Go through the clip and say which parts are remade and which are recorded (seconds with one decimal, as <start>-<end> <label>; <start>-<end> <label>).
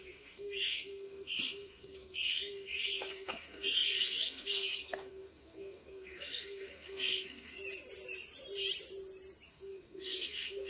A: 0.0-7.6 remade; 7.6-9.5 recorded; 9.5-10.7 remade